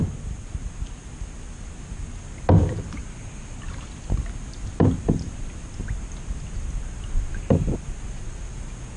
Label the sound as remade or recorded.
recorded